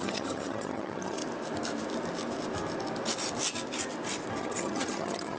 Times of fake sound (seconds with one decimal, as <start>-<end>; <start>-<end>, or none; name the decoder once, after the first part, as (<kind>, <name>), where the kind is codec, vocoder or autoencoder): 0.0-1.2 (vocoder, HiFi-GAN); 4.4-5.4